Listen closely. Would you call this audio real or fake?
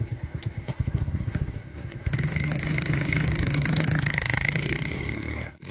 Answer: fake